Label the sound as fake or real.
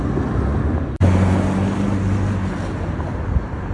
real